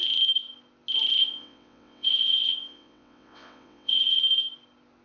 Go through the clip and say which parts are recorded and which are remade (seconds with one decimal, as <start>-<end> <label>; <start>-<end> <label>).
0.0-1.2 recorded; 1.2-4.2 remade; 4.2-5.0 recorded